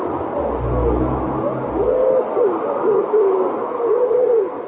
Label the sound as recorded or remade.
recorded